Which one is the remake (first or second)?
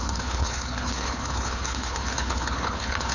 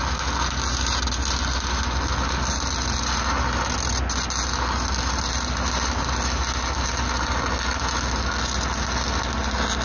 first